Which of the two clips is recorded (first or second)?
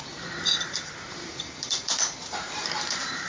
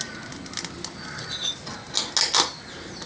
second